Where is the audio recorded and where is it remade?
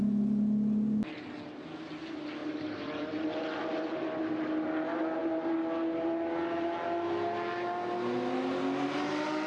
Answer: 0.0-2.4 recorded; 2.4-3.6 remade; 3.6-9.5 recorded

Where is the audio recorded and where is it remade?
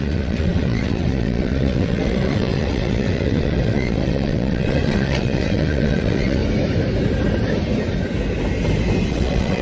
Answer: 0.0-6.4 remade; 6.4-9.1 recorded; 9.1-9.6 remade